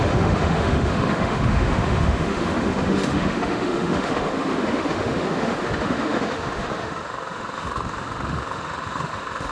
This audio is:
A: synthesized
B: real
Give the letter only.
A